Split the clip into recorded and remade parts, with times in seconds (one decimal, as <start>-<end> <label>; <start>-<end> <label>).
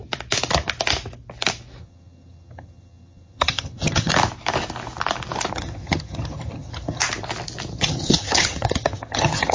0.0-1.8 recorded; 1.8-4.1 remade; 4.1-5.5 recorded; 5.5-7.0 remade; 7.0-7.7 recorded; 7.7-9.5 remade